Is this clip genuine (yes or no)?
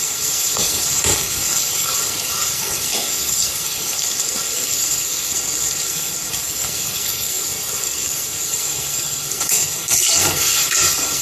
no